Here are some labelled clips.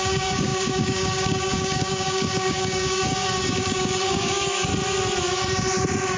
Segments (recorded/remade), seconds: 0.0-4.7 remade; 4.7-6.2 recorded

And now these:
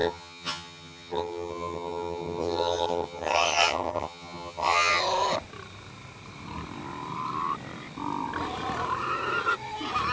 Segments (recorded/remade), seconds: 0.0-5.0 remade; 5.0-10.1 recorded

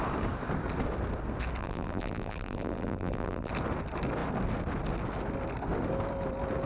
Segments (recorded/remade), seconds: 0.0-1.6 recorded; 1.6-3.5 remade; 3.5-6.7 recorded

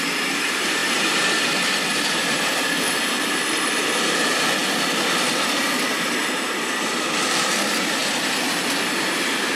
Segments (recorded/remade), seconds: 0.0-8.0 remade; 8.0-8.6 recorded; 8.6-9.5 remade

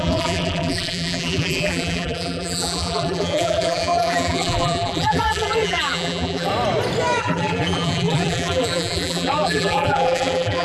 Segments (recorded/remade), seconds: 0.0-6.5 remade; 6.5-7.2 recorded; 7.2-10.6 remade

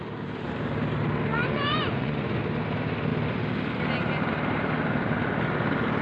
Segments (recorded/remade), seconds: 0.0-1.3 recorded; 1.3-2.4 remade; 2.4-6.0 recorded

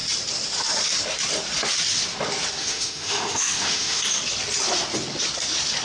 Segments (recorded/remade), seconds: 0.0-2.6 recorded; 2.6-4.0 remade; 4.0-5.8 recorded